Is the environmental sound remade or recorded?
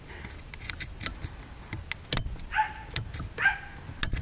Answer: recorded